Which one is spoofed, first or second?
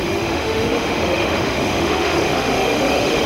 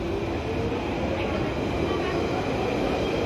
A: first